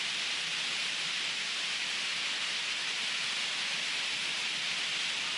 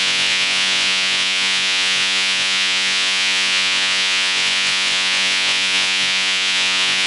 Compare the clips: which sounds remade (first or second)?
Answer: second